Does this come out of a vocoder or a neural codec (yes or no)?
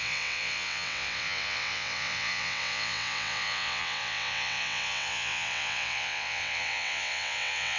yes